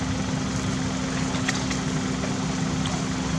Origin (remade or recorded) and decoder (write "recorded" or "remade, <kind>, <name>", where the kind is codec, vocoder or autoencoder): recorded